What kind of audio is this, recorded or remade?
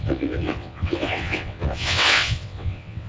remade